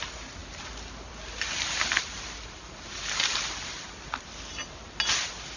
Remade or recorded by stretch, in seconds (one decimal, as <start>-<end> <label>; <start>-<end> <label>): 0.0-5.6 recorded